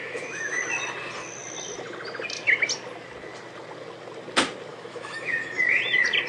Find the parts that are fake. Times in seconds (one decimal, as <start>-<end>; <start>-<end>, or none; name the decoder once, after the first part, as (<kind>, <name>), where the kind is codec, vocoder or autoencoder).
0.0-0.6 (autoencoder, DAC-VAE); 4.7-5.8